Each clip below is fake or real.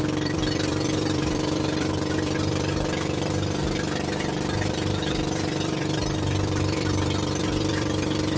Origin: fake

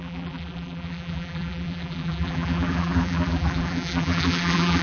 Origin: fake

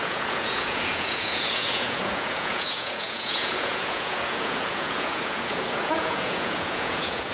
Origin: fake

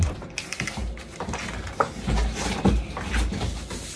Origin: real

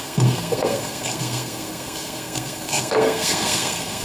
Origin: fake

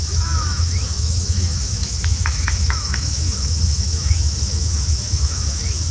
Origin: fake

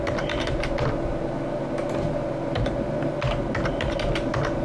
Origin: real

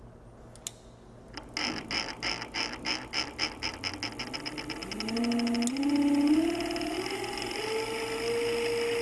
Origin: real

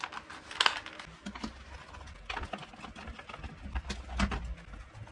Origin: real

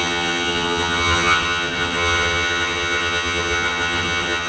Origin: fake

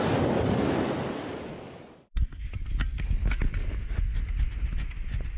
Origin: real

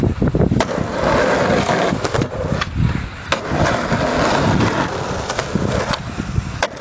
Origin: real